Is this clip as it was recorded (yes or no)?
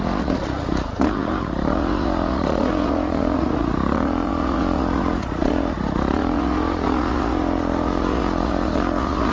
no